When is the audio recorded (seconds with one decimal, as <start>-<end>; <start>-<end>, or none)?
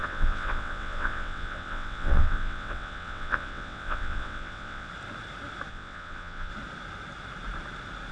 4.9-5.7; 6.5-8.1